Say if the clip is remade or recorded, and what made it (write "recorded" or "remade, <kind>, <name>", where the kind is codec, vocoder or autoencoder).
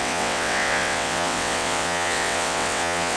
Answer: remade, vocoder, WaveNeXt